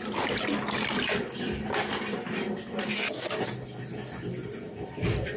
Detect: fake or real real